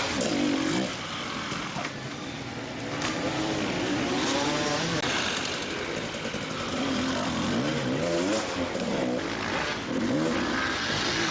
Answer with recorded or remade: recorded